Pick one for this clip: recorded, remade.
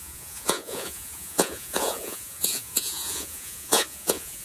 remade